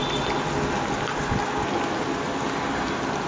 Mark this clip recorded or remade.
recorded